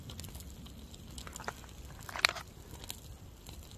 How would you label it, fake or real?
real